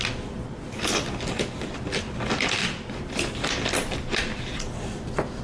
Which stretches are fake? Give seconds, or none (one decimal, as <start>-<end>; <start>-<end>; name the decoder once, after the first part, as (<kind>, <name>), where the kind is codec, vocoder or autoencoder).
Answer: 2.6-5.4 (vocoder, BigVGAN v2)